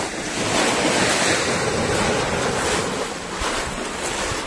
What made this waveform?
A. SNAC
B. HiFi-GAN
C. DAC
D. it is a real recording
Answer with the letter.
D